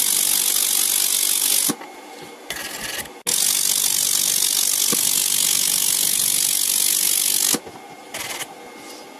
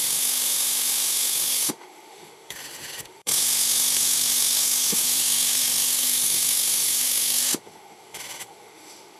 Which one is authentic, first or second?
first